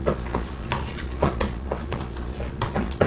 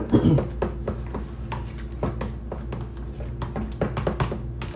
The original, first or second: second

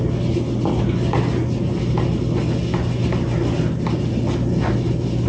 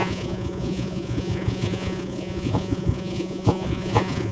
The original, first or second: first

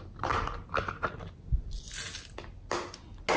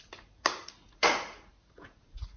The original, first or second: first